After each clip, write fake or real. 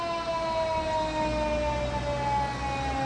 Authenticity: real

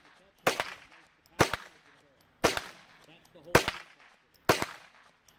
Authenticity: real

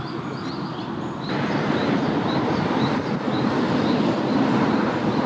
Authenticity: real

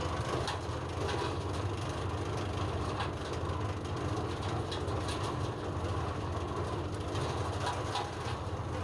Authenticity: real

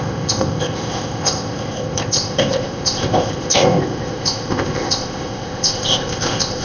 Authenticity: fake